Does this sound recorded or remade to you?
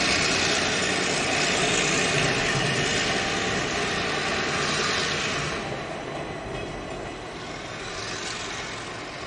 recorded